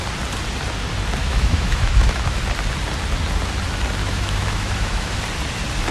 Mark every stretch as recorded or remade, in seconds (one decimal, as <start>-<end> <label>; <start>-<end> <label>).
0.0-1.2 recorded; 1.2-2.4 remade; 2.4-4.0 recorded; 4.0-5.2 remade; 5.2-5.9 recorded